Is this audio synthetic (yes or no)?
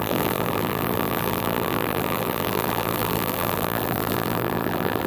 yes